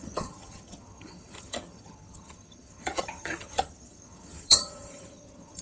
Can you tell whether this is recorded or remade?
remade